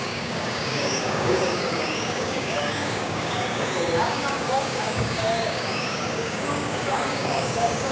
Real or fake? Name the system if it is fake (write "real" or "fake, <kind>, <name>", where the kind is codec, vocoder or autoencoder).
fake, codec, DAC